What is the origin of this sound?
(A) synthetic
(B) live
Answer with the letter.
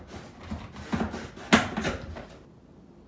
B